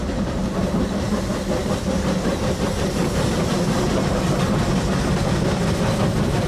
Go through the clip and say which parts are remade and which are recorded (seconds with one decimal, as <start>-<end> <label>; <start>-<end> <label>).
0.0-1.2 remade; 1.2-1.6 recorded; 1.6-4.3 remade; 4.3-6.5 recorded